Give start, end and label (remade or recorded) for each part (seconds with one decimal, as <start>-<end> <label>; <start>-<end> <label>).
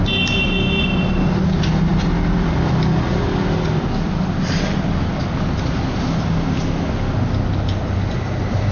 0.0-8.7 recorded